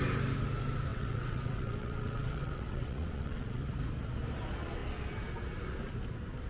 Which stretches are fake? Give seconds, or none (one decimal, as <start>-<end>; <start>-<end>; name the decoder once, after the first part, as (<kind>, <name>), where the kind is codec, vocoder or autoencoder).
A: 0.9-3.6 (vocoder, WaveNeXt)